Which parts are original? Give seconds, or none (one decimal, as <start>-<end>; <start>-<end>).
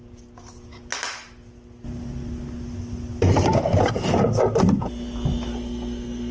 0.0-5.5